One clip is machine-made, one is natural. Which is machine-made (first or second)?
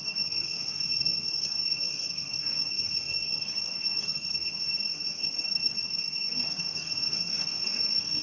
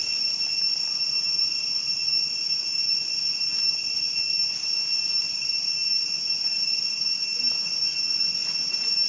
first